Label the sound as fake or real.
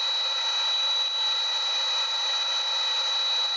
real